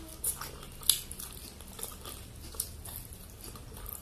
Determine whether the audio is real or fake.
real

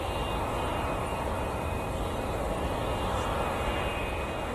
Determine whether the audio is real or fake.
real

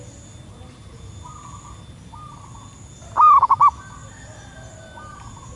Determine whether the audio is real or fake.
real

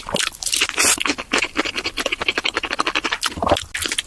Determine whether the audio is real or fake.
real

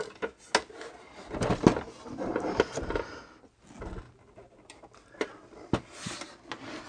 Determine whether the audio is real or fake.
real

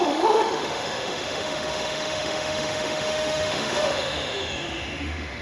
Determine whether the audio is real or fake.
fake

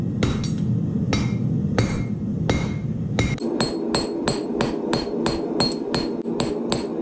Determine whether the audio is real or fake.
real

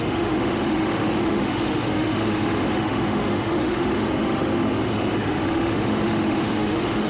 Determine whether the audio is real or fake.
fake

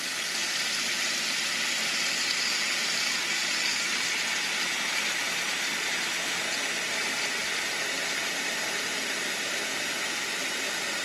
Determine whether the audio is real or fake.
real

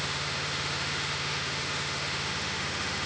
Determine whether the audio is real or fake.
fake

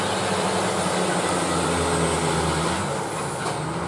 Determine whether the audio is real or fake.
real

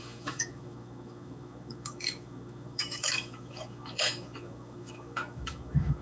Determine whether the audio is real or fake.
fake